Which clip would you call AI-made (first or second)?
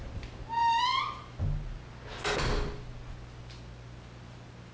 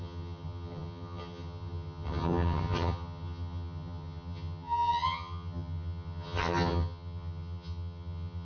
second